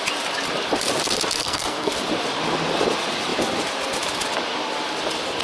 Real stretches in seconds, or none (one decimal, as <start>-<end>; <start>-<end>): 0.0-1.4; 1.9-5.4